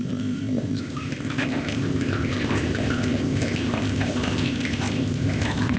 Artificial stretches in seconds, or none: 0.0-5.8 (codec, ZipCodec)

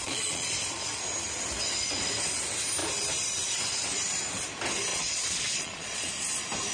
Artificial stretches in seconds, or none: 0.0-0.5 (vocoder, Vocos); 4.9-6.1

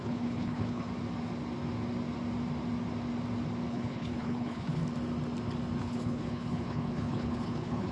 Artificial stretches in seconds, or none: 0.0-0.9 (codec, HILCodec); 3.7-4.8; 5.8-7.9

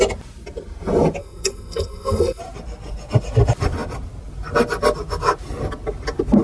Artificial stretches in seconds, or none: 1.2-2.4 (codec, SNAC)

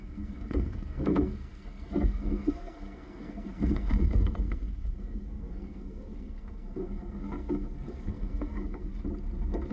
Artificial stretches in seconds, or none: 0.0-8.9 (codec, SNAC)

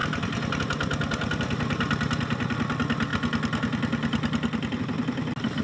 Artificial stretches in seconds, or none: none

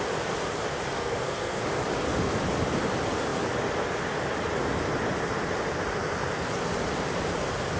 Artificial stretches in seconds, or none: 1.0-1.6 (codec, SNAC)

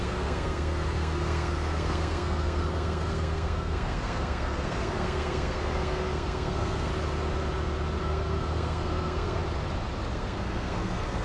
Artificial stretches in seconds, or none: 0.0-6.9 (codec, SNAC); 8.0-9.4; 10.1-11.2